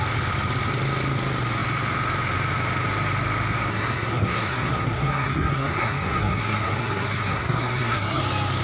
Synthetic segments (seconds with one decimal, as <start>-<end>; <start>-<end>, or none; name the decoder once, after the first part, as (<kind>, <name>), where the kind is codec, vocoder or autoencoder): 3.7-8.2 (codec, SNAC)